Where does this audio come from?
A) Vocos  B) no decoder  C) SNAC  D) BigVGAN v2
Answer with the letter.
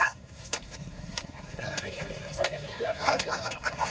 C